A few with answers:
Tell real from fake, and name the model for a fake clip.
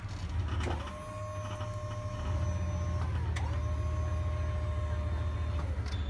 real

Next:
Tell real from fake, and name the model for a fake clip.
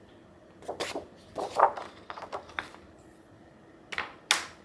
real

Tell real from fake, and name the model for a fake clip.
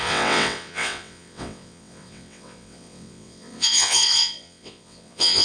fake, vocoder, WaveNeXt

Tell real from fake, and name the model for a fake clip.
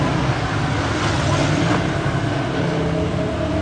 real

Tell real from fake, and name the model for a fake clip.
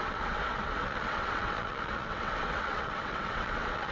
fake, vocoder, WaveNeXt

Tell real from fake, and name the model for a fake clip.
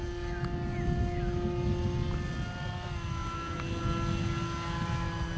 real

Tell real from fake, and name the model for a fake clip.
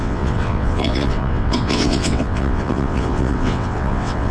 fake, vocoder, WaveNeXt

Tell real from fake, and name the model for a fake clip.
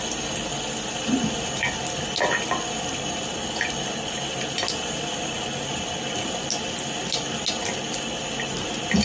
real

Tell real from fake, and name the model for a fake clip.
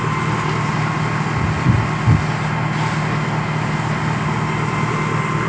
real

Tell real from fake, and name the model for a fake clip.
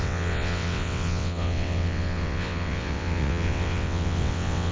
fake, vocoder, WaveNeXt